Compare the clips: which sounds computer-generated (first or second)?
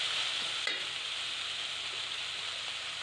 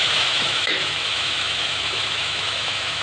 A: second